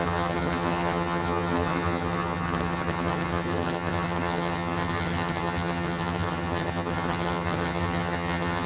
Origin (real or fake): fake